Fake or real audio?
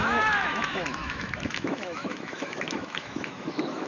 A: fake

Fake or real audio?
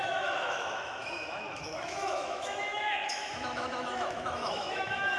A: fake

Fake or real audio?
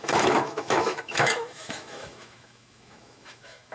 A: fake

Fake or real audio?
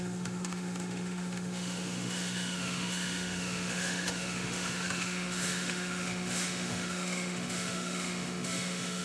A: fake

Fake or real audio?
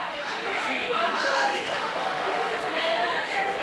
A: fake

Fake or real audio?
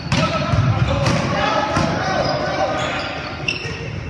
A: real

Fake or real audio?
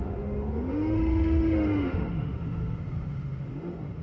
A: fake